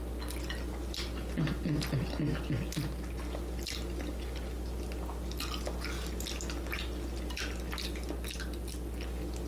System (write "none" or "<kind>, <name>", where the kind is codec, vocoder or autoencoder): none